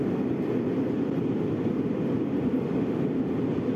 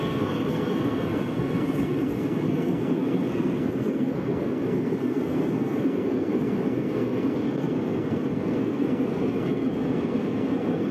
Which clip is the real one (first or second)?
first